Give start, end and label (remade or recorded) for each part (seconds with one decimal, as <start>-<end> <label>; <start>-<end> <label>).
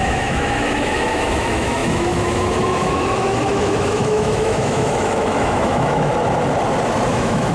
0.0-6.1 remade; 6.1-7.1 recorded; 7.1-7.5 remade